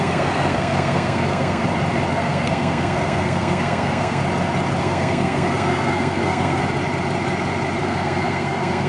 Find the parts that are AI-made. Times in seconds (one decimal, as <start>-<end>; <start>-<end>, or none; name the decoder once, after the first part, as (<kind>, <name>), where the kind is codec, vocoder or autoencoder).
0.0-1.6 (codec, SNAC); 2.1-4.2; 4.8-6.6; 7.8-8.9